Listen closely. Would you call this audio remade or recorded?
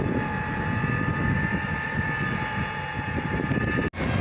recorded